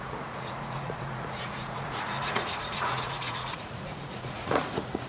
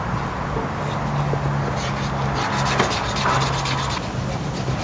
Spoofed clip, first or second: first